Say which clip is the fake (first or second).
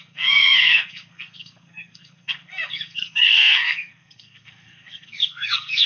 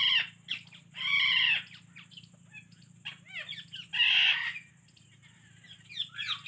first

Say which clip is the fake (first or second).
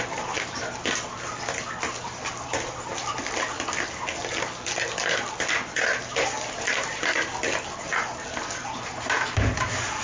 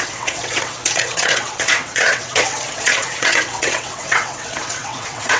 second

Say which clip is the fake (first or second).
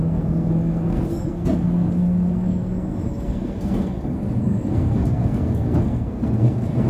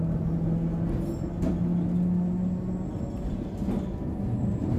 first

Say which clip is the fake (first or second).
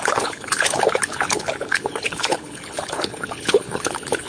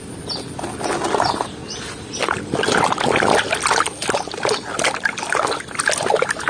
first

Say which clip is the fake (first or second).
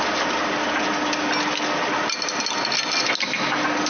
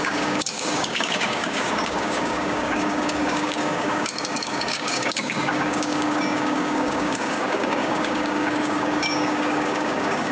second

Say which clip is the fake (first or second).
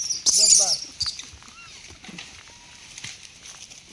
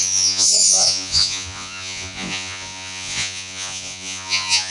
second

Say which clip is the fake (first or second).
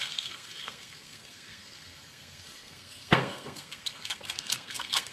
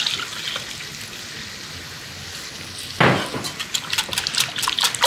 first